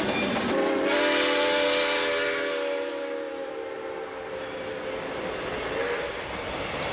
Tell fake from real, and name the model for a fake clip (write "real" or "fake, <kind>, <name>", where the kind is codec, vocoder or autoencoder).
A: real